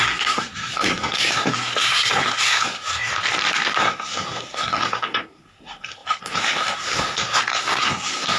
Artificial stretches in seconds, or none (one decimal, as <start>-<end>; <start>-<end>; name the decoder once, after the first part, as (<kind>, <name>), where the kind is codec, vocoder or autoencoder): 0.0-3.1 (codec, SNAC); 3.8-8.4